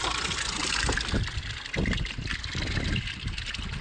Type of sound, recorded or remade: recorded